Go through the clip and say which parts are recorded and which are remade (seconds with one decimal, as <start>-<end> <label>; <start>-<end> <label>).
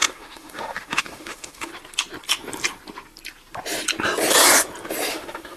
0.0-1.7 remade; 1.7-5.1 recorded; 5.1-5.6 remade